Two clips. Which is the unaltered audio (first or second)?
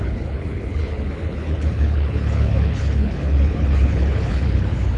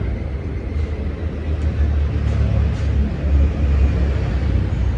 second